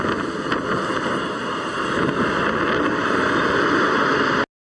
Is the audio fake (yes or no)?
no